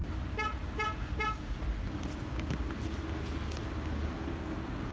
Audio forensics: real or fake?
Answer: real